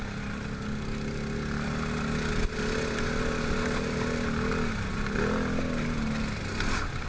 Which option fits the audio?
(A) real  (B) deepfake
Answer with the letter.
A